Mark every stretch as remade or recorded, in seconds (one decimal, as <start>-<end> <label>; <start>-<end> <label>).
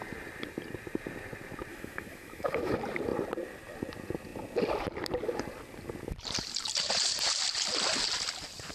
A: 0.0-1.7 recorded; 1.7-2.7 remade; 2.7-8.7 recorded